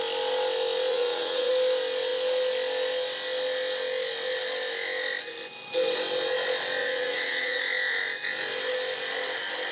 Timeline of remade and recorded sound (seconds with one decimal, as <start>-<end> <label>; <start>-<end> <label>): 0.0-0.9 recorded; 0.9-1.5 remade; 1.5-6.8 recorded; 6.8-7.6 remade; 7.6-9.7 recorded